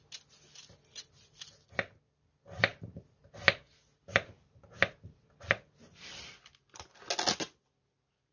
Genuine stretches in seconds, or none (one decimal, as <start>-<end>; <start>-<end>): 0.0-8.3